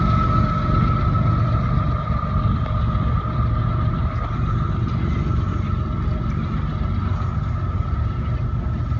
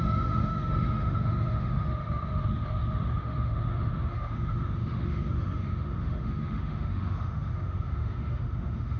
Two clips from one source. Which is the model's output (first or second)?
second